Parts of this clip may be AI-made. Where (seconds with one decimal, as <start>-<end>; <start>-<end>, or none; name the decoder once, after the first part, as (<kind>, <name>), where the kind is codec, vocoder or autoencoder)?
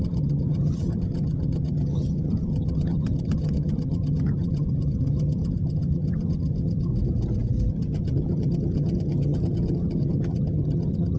0.0-6.9 (vocoder, HiFi-GAN); 7.7-11.2